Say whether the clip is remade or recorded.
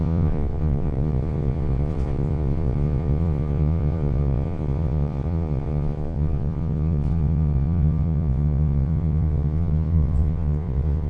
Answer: remade